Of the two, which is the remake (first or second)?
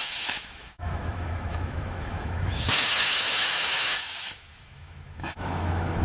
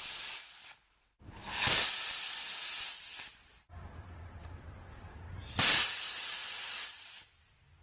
first